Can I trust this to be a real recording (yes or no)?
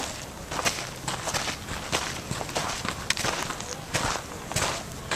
yes